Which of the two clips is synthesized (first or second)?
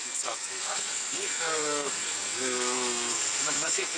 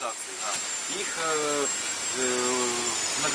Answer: first